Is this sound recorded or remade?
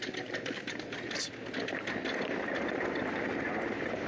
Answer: recorded